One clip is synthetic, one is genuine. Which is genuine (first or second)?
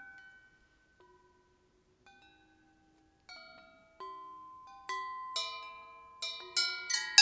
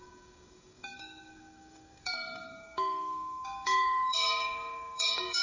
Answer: first